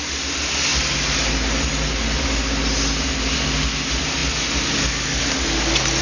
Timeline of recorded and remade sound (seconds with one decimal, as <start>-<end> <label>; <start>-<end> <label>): 0.0-6.0 recorded